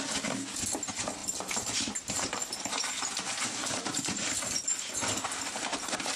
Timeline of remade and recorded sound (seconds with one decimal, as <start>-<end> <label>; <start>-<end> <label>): 0.0-1.2 recorded; 1.2-4.9 remade; 4.9-6.2 recorded